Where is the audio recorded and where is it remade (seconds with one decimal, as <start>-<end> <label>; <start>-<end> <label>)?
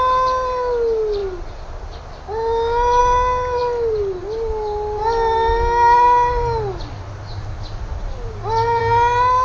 0.0-9.4 recorded